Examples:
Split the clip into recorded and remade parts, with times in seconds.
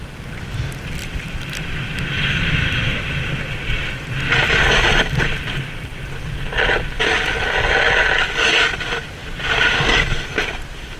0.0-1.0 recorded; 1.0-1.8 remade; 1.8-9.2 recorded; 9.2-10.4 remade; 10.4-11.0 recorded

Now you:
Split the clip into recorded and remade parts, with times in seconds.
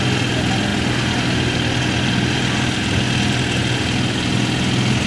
0.0-5.1 recorded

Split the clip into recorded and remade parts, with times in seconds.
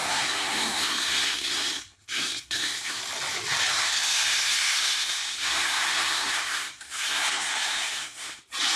0.0-3.0 remade; 3.0-3.7 recorded; 3.7-8.4 remade; 8.4-8.8 recorded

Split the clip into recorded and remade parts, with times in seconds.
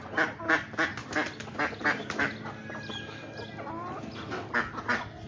0.0-5.3 recorded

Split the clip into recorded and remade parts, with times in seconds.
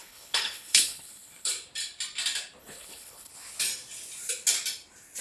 0.0-1.5 remade; 1.5-2.6 recorded; 2.6-3.3 remade; 3.3-5.2 recorded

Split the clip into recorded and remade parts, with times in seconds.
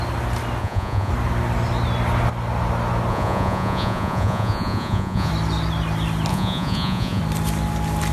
0.0-0.6 recorded; 0.6-1.1 remade; 1.1-3.1 recorded; 3.1-5.3 remade; 5.3-6.3 recorded; 6.3-7.2 remade; 7.2-8.1 recorded